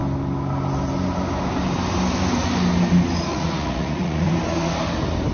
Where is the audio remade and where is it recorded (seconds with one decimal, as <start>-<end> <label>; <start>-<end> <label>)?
0.0-3.3 recorded; 3.3-4.3 remade; 4.3-5.3 recorded

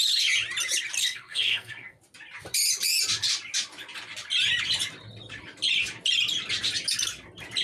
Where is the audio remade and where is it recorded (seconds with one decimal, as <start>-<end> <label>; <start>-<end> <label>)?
0.0-1.0 recorded; 1.0-2.0 remade; 2.0-7.6 recorded

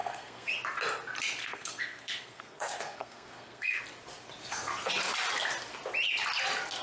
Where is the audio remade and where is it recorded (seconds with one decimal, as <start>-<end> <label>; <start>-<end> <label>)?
0.0-0.5 remade; 0.5-1.4 recorded; 1.4-3.8 remade; 3.8-4.4 recorded; 4.4-4.9 remade; 4.9-6.8 recorded

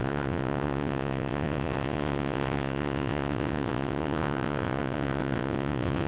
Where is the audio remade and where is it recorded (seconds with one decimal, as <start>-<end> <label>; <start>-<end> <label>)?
0.0-6.1 remade